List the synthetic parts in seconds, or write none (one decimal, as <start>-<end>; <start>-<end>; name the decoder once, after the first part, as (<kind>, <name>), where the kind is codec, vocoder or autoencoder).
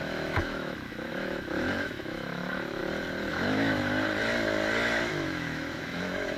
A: 0.0-2.8 (autoencoder, DAC-VAE); 3.3-3.8; 5.0-6.4